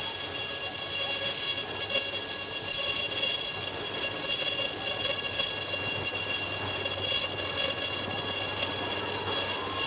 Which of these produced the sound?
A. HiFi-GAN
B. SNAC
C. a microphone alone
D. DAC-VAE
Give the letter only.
C